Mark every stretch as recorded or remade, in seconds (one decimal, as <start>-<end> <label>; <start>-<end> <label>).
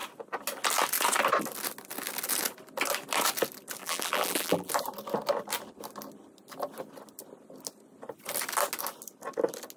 0.0-3.8 recorded; 3.8-4.7 remade; 4.7-9.8 recorded